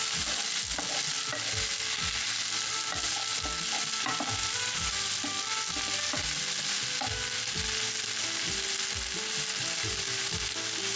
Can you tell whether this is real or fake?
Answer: real